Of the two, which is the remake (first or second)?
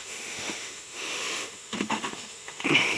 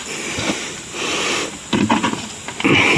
first